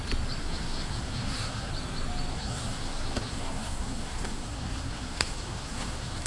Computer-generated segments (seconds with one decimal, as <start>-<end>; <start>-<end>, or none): 0.4-1.7; 2.3-6.3